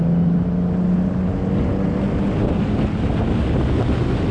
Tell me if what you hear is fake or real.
real